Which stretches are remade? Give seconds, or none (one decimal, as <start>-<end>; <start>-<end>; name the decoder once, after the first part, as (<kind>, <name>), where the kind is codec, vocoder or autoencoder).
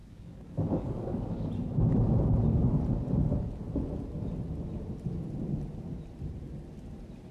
0.0-1.5 (codec, DAC)